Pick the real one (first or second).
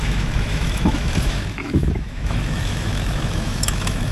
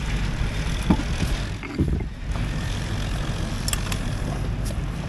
second